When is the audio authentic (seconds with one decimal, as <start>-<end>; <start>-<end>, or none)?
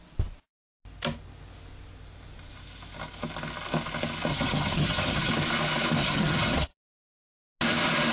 0.0-4.3; 5.3-6.0; 6.7-8.1